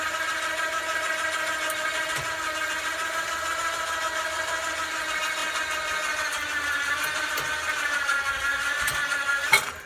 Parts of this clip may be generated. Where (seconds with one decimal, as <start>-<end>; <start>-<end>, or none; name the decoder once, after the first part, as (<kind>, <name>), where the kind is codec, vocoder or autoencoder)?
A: none